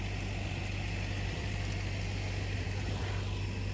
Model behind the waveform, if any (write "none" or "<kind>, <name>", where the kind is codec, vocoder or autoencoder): none